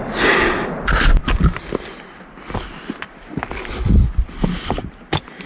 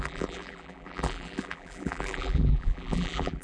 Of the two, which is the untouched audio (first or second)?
first